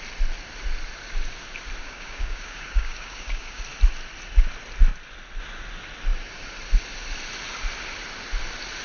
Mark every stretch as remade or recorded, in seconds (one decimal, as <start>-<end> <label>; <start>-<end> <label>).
0.0-1.8 recorded; 1.8-3.6 remade; 3.6-8.8 recorded